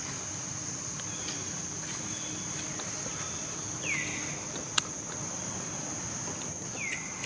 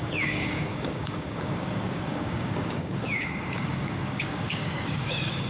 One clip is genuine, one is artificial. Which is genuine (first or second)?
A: first